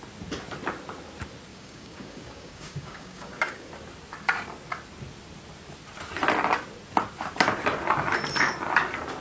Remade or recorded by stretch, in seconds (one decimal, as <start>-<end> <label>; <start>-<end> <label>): 0.0-1.5 recorded; 1.5-3.7 remade; 3.7-9.2 recorded